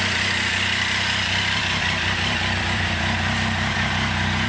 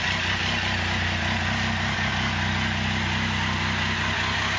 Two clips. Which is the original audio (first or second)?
second